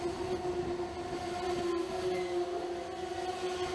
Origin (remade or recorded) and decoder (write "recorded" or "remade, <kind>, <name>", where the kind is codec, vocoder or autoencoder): recorded